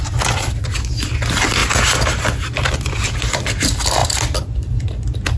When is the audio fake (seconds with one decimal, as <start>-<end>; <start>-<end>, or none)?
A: 1.6-2.2